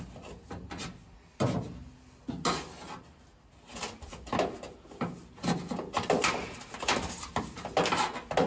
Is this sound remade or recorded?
recorded